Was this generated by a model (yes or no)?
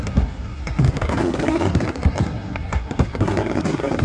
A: yes